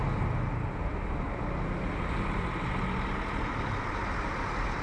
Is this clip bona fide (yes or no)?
yes